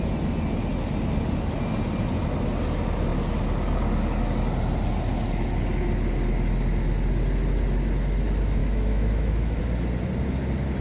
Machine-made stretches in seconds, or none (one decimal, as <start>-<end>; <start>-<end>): 8.6-9.6